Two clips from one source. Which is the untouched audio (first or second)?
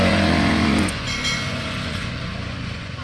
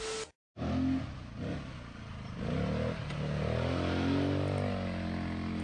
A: second